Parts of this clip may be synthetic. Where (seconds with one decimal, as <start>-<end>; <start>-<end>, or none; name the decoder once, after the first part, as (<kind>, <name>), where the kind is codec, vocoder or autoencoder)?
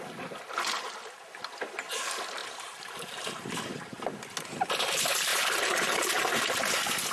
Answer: 2.4-4.2 (vocoder, BigVGAN v2); 5.3-6.5